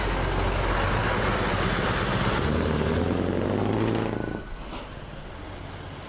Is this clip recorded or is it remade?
recorded